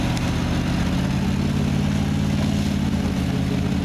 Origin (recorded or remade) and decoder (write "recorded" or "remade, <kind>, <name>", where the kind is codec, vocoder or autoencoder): recorded